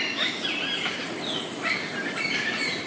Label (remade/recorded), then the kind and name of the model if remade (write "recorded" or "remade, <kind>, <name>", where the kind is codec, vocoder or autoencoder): recorded